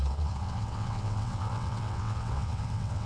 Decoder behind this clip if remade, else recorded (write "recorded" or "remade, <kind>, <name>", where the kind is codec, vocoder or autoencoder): remade, vocoder, WaveNeXt